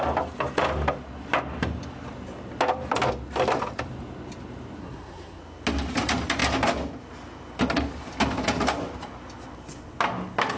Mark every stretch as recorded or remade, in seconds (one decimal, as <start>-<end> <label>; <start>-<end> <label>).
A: 0.0-4.8 recorded; 4.8-5.4 remade; 5.4-10.6 recorded